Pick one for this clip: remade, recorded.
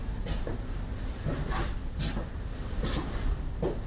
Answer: recorded